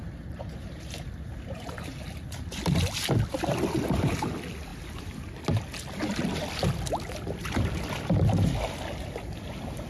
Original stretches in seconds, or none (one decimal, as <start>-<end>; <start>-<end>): 0.0-9.9